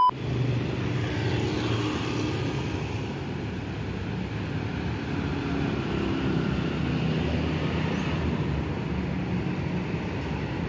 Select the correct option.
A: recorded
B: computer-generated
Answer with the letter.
A